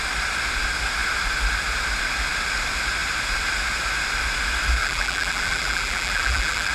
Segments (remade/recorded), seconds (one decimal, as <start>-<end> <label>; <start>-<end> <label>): 0.0-4.8 recorded; 4.8-6.7 remade